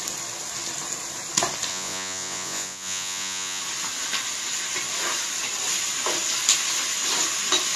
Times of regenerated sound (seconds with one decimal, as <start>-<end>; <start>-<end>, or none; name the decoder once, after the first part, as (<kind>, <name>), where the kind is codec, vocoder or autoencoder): 1.7-3.6 (vocoder, Vocos)